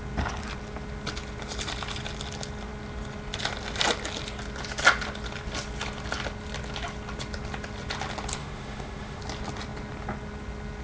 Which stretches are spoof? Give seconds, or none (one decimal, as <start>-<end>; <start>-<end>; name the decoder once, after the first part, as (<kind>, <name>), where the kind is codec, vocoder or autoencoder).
8.4-9.2 (autoencoder, DAC-VAE)